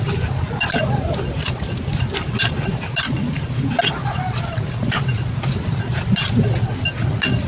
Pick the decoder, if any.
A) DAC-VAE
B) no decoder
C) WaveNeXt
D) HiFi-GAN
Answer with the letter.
B